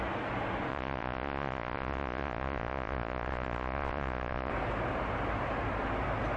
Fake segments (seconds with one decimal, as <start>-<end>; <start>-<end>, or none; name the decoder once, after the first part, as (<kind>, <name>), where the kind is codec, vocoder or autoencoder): 0.7-4.5 (vocoder, Vocos)